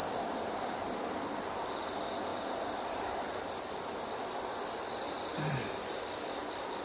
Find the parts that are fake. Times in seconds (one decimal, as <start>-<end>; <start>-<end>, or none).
0.0-0.5; 2.3-6.8